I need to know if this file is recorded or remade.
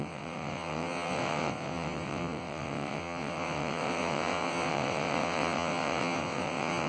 remade